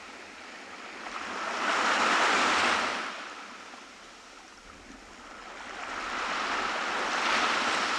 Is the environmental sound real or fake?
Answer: real